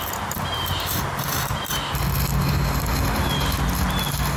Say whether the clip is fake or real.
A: real